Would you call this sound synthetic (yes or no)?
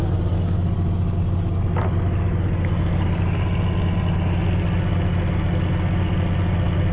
no